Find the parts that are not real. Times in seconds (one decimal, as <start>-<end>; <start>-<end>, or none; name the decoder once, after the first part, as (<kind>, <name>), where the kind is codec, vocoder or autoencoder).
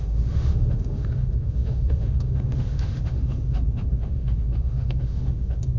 0.0-5.8 (autoencoder, DAC-VAE)